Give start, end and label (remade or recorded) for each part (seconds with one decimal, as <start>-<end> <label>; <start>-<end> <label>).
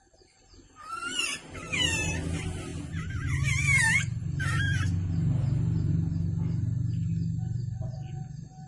0.0-8.7 recorded